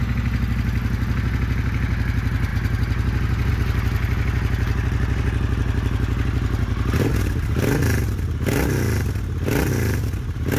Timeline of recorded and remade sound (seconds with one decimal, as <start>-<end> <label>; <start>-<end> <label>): 0.0-10.6 recorded